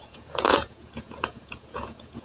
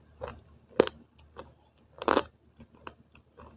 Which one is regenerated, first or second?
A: first